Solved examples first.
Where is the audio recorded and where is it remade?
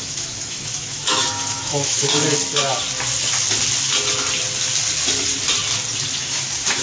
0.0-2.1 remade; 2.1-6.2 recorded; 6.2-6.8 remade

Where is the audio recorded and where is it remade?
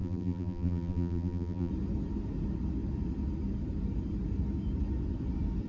0.0-1.7 remade; 1.7-5.7 recorded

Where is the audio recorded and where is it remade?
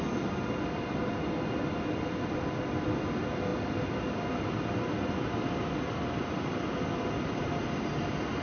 0.0-8.4 recorded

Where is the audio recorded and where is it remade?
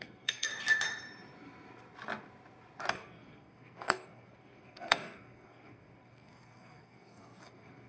0.0-0.5 remade; 0.5-2.9 recorded; 2.9-7.9 remade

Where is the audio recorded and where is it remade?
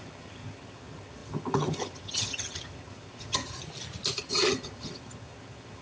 0.0-3.4 remade; 3.4-4.3 recorded; 4.3-5.8 remade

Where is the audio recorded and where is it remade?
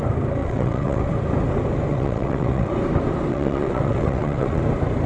0.0-0.4 recorded; 0.4-1.0 remade; 1.0-1.9 recorded; 1.9-2.7 remade; 2.7-3.3 recorded; 3.3-4.6 remade; 4.6-5.1 recorded